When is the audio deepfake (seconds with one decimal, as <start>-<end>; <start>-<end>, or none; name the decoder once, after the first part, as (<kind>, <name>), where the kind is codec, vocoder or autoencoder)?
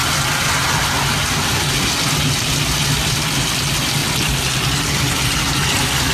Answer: none